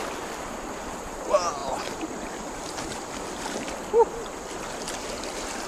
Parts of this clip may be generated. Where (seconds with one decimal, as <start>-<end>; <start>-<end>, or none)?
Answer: 1.6-3.0